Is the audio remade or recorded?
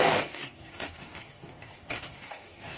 remade